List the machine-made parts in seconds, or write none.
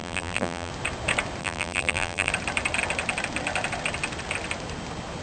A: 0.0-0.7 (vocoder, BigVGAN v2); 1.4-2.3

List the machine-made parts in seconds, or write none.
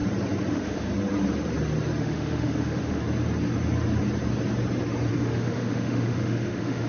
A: 0.5-0.9 (autoencoder, DAC-VAE); 2.0-3.0; 5.1-6.9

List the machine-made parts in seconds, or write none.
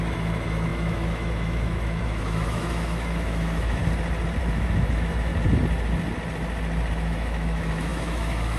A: 0.0-3.8 (autoencoder, DAC-VAE); 4.4-5.3; 6.9-8.6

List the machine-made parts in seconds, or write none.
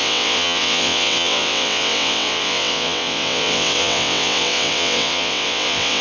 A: 0.0-6.0 (vocoder, WaveNeXt)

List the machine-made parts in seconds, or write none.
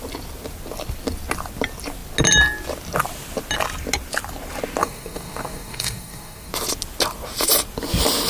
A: 4.8-6.5 (codec, DAC)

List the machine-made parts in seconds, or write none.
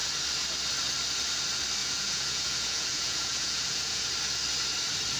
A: 1.8-4.1 (vocoder, Vocos)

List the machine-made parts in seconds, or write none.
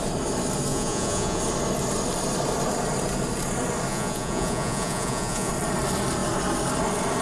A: 0.7-1.4 (vocoder, Vocos); 3.9-5.5